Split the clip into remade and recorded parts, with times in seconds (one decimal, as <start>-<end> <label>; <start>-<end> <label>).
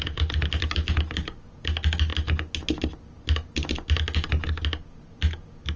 0.0-5.8 recorded